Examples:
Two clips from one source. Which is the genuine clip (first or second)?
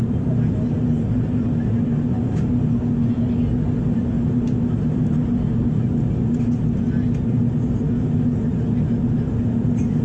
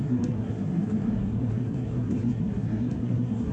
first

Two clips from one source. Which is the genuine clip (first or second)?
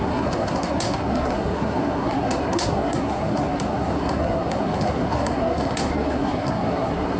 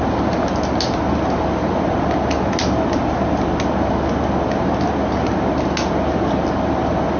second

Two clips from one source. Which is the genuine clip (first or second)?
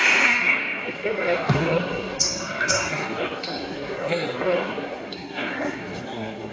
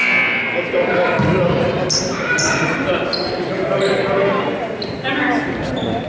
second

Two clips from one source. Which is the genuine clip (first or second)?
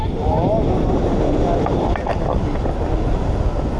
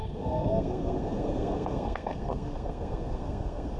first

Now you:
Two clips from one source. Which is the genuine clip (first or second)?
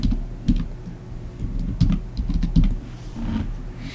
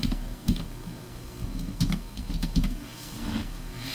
first